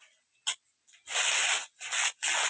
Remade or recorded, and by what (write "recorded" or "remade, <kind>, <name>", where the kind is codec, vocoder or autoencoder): recorded